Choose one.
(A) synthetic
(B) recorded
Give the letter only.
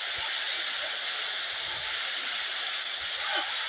B